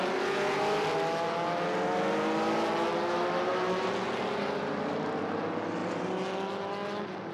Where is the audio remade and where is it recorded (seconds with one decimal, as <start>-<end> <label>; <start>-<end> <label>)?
0.0-7.3 recorded